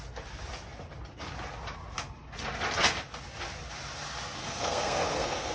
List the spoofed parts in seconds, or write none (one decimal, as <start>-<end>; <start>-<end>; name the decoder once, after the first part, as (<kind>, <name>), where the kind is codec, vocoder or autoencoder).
4.4-5.5 (codec, SNAC)